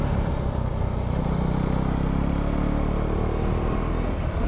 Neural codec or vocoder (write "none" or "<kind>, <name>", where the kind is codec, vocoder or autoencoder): none